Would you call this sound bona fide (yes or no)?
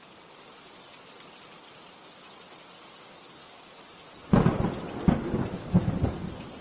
yes